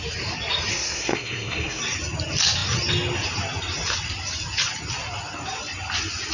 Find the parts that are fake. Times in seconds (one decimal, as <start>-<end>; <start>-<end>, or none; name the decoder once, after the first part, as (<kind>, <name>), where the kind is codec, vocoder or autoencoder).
0.7-1.8 (codec, SNAC)